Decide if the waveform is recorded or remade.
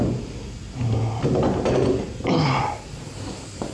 recorded